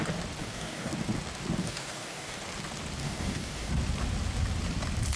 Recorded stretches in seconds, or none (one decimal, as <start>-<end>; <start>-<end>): 0.0-0.4; 0.9-1.6; 2.4-3.0; 3.7-5.2